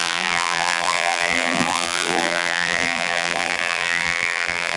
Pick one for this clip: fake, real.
fake